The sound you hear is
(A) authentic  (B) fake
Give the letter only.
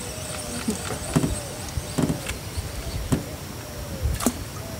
A